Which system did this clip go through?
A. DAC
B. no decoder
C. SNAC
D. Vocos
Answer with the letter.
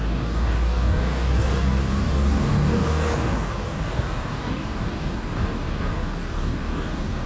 A